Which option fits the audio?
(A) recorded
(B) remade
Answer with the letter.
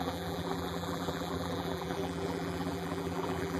B